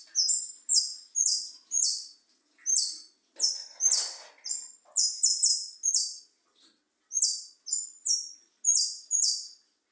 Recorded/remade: recorded